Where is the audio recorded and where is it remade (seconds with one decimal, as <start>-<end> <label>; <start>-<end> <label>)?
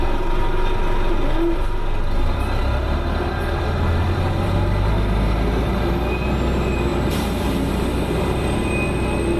0.0-2.6 recorded; 2.6-4.9 remade; 4.9-6.9 recorded; 6.9-8.7 remade; 8.7-9.4 recorded